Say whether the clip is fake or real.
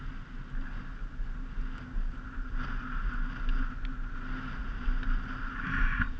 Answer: real